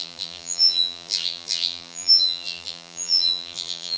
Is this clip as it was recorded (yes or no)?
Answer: no